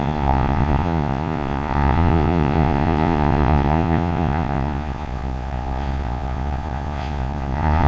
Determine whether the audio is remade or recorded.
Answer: remade